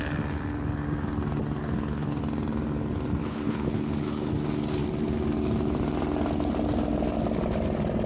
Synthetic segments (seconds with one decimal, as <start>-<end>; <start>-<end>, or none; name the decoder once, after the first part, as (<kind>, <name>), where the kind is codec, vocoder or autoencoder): 1.6-2.2 (codec, HILCodec); 3.2-4.3